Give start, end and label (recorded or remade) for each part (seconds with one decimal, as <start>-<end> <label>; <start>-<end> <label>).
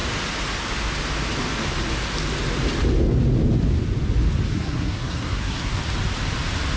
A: 0.0-4.5 recorded; 4.5-5.8 remade; 5.8-6.8 recorded